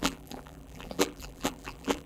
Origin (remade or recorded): remade